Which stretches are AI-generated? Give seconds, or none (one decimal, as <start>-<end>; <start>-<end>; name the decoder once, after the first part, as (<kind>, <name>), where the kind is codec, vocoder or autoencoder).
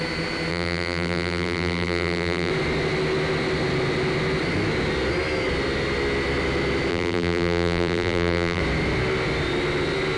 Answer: 0.5-2.5 (vocoder, BigVGAN v2); 6.9-8.6